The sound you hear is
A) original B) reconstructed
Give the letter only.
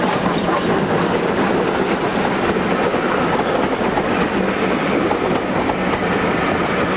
A